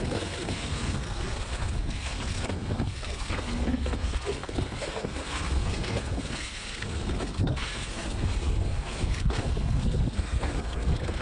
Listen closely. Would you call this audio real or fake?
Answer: fake